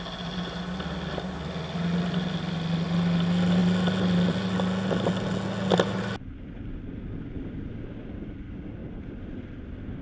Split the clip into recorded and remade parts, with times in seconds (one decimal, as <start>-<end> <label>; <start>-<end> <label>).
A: 0.0-10.0 recorded